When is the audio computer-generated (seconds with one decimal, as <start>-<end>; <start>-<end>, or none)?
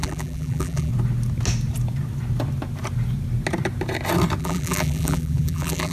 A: 0.0-0.9; 4.4-5.9